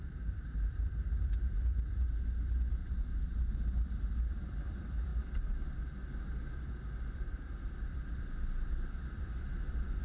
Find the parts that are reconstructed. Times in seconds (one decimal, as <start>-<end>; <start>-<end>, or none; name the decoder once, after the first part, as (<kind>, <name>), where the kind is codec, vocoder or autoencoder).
0.0-5.1 (vocoder, BigVGAN v2); 6.2-10.0